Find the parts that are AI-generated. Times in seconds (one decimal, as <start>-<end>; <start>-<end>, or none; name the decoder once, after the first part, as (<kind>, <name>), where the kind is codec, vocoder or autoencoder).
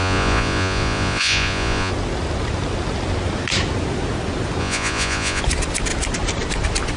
0.0-1.9 (vocoder, Vocos); 4.6-5.4